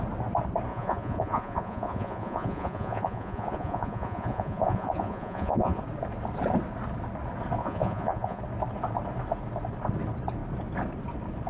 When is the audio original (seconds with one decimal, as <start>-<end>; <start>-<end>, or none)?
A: 0.0-0.7; 5.8-7.6; 8.4-11.5